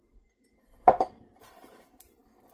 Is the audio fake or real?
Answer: fake